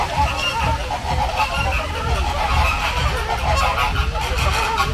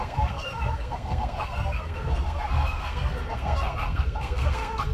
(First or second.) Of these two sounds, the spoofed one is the second